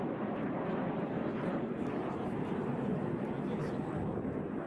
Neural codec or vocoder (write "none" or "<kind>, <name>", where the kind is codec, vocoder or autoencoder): none